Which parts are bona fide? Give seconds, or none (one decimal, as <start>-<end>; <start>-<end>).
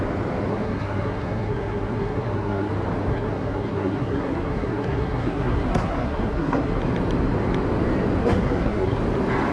0.0-0.5; 2.7-3.1; 6.8-8.2; 9.0-9.5